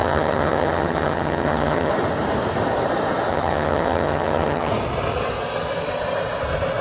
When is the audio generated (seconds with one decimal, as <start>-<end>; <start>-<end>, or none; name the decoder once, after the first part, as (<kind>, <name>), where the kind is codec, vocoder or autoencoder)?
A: 0.0-1.9 (vocoder, HiFi-GAN); 3.3-4.7